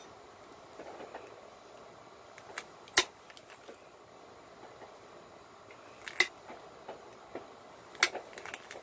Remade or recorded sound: recorded